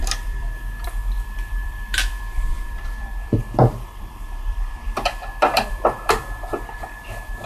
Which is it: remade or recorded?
remade